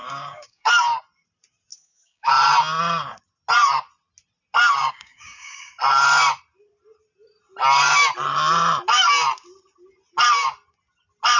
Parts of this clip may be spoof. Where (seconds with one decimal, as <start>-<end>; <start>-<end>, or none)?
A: 0.0-0.7; 1.7-2.3; 4.8-5.7